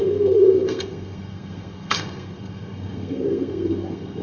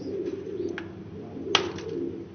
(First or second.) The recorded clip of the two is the second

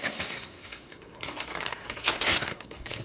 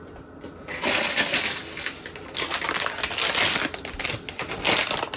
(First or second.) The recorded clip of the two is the second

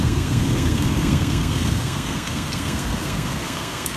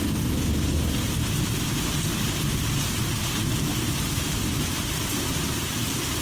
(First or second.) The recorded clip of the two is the second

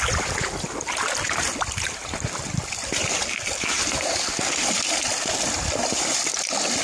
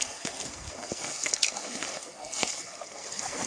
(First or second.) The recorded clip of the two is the first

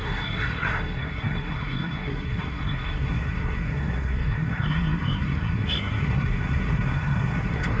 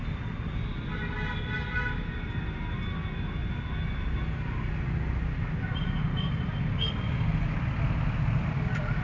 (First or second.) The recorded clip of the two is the second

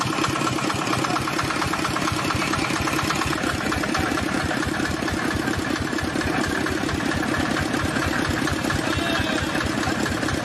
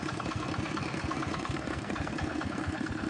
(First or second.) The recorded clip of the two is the first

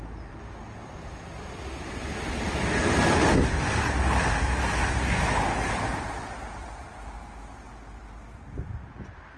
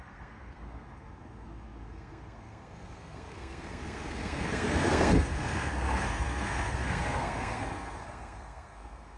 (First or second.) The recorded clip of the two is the first